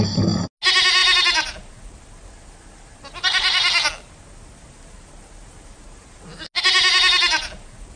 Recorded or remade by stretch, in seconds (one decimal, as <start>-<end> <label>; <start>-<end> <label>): 0.0-8.0 recorded